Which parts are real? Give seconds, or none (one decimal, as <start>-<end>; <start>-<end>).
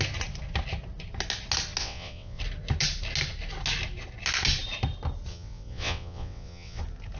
0.0-1.8; 2.4-5.3; 6.8-7.2